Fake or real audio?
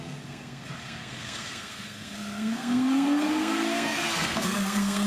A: fake